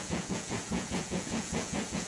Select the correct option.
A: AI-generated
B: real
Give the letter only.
A